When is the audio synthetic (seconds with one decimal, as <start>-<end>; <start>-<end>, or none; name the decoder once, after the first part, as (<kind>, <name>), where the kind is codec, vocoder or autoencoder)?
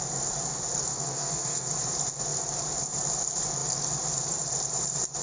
0.9-1.7 (codec, SNAC)